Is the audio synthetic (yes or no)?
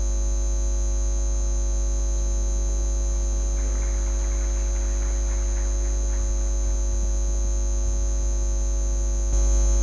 no